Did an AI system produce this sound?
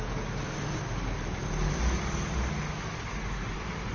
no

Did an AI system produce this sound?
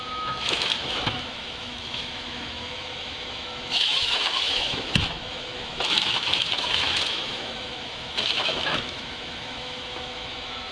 yes